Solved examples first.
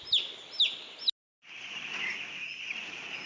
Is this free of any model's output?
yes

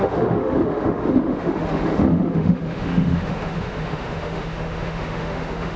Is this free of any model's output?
no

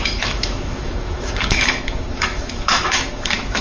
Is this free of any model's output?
no